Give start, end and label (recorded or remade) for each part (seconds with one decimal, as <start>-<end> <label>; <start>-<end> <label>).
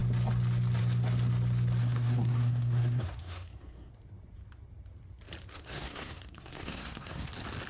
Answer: 0.0-1.8 recorded; 1.8-3.9 remade; 3.9-5.5 recorded; 5.5-7.3 remade; 7.3-7.7 recorded